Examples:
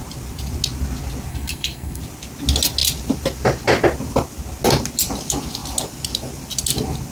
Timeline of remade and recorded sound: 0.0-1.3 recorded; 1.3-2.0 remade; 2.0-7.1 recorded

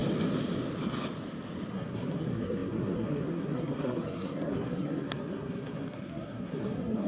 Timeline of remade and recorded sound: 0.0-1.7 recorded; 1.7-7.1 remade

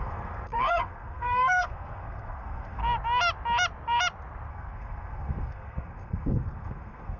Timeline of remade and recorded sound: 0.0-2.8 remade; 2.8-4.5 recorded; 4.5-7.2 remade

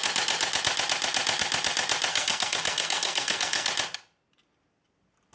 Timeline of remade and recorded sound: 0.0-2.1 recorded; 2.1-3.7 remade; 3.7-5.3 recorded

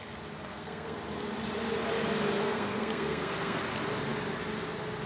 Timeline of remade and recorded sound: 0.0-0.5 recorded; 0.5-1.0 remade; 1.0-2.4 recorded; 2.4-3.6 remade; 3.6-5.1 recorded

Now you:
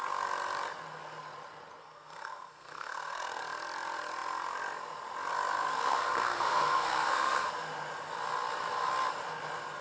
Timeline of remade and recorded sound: 0.0-1.8 recorded; 1.8-3.4 remade; 3.4-5.7 recorded; 5.7-7.5 remade; 7.5-9.8 recorded

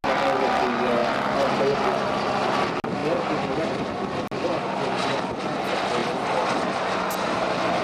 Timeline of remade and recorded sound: 0.0-7.8 recorded